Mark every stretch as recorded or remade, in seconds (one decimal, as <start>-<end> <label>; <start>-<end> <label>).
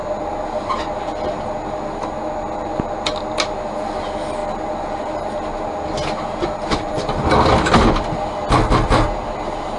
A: 0.0-9.8 recorded